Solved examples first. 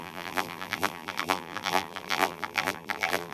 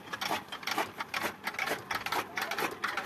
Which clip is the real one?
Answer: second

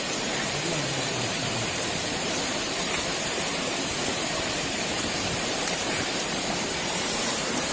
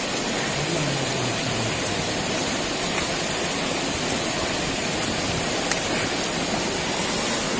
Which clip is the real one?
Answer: second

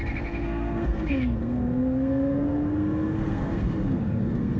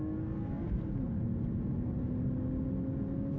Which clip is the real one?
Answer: second